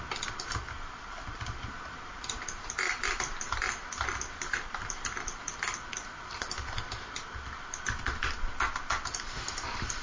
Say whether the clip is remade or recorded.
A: remade